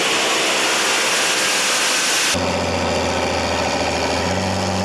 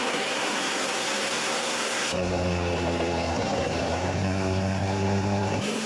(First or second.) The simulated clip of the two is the second